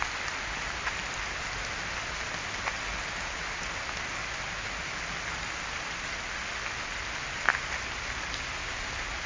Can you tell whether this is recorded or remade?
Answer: recorded